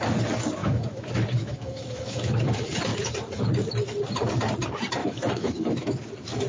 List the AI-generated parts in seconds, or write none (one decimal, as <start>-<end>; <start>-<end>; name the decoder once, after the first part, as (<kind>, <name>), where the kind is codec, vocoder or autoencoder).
0.6-2.4 (autoencoder, DAC-VAE); 5.0-6.1